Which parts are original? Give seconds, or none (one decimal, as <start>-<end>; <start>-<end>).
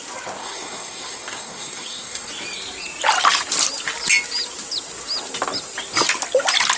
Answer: 0.0-0.4; 2.3-6.8